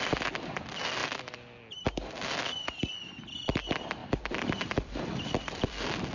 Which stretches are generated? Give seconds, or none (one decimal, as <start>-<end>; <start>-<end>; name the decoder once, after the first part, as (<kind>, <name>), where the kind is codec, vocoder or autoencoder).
4.0-5.5 (vocoder, BigVGAN v2)